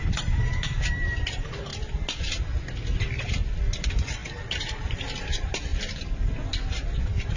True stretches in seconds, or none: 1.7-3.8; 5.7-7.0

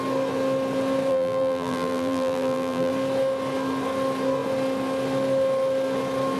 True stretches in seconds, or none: 0.0-1.1; 2.9-6.4

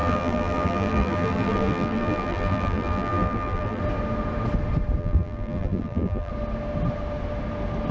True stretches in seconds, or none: 3.8-5.0; 6.3-7.9

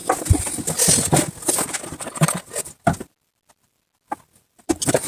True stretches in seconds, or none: 0.0-5.1

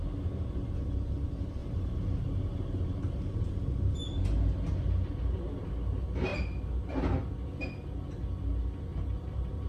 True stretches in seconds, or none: 0.0-1.6; 4.0-8.9

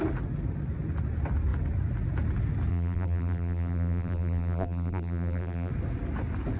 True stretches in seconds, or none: 0.0-2.7; 5.7-6.6

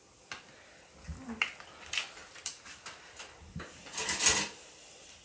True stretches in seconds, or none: 0.0-5.2

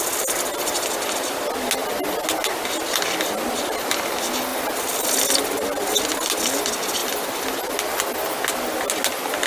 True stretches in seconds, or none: 0.0-9.5